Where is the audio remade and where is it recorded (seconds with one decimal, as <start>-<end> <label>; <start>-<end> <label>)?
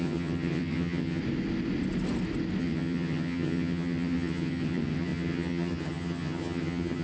0.0-1.2 remade; 1.2-2.6 recorded; 2.6-7.0 remade